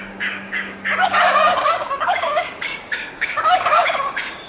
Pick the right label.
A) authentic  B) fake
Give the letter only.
B